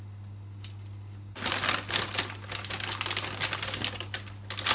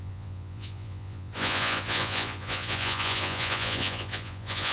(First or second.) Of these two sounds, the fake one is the second